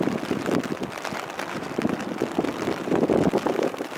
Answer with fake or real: fake